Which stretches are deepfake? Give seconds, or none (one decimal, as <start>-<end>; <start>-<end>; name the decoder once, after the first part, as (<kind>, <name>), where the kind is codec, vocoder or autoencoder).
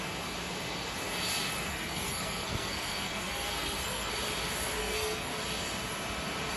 1.7-4.1 (codec, SNAC); 4.8-5.3